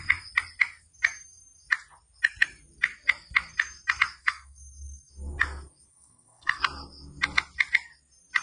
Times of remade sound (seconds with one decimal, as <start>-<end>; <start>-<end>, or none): 4.2-5.1; 5.9-6.6

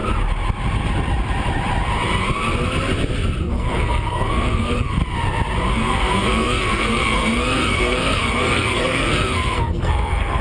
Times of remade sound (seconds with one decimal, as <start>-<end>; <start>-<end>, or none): 3.4-5.0; 5.7-10.4